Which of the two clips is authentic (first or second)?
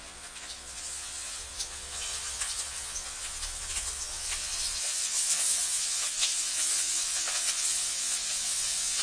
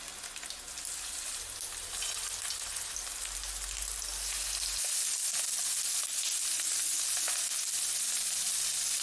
second